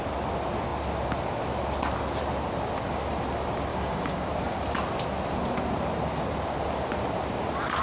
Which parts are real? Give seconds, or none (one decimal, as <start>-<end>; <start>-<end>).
0.0-3.7; 4.3-7.8